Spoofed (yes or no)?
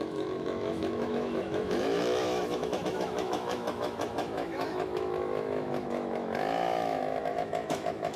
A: yes